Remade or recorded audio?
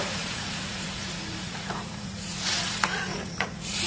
remade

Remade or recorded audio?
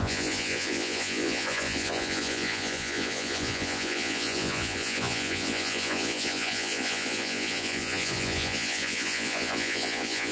remade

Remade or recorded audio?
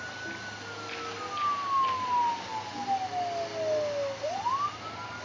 recorded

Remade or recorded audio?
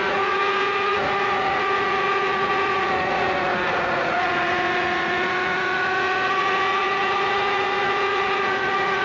remade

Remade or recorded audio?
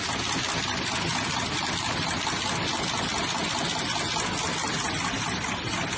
recorded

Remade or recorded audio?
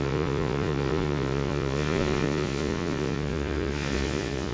remade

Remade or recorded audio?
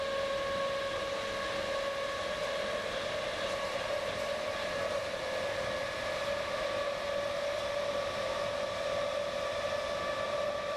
recorded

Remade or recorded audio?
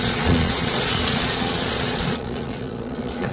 remade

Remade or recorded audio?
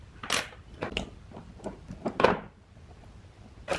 recorded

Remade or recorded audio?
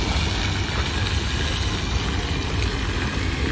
recorded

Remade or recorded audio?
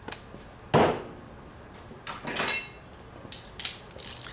recorded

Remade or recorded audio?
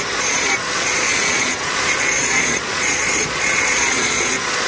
remade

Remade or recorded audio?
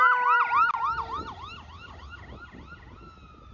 recorded